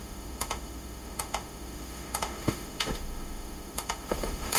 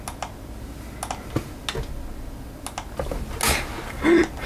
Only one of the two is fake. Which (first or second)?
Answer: first